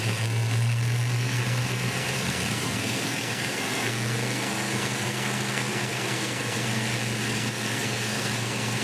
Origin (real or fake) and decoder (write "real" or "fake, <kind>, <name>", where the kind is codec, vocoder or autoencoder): fake, codec, SNAC